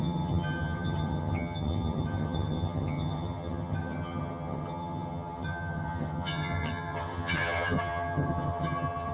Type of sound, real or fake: fake